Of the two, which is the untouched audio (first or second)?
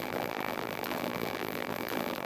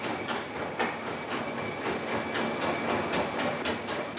second